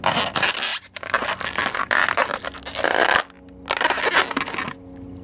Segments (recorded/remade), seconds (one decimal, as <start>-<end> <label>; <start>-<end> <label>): 0.0-1.6 recorded; 1.6-2.4 remade; 2.4-5.2 recorded